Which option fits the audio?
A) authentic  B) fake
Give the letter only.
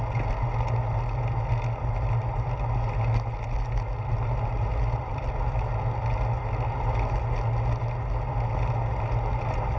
A